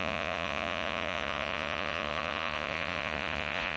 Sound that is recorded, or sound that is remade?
remade